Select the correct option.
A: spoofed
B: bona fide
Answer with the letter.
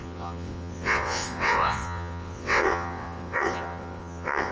A